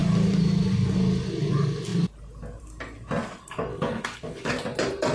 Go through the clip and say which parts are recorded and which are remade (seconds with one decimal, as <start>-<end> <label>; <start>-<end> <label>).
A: 0.0-3.7 recorded; 3.7-4.5 remade; 4.5-5.1 recorded